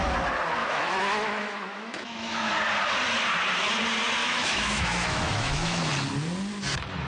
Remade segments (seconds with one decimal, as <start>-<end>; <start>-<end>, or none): 0.6-2.5; 4.2-5.9